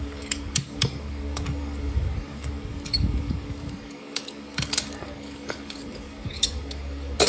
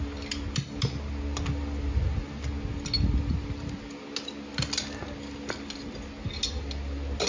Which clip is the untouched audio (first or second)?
second